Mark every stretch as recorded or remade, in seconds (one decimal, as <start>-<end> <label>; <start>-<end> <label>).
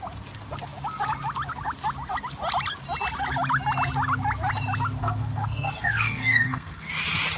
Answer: 0.0-5.0 recorded; 5.0-6.9 remade; 6.9-7.4 recorded